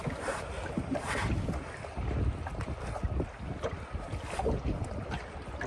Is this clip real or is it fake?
real